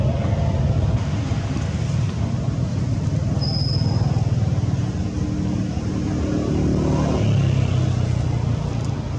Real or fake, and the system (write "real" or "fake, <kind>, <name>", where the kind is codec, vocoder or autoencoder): real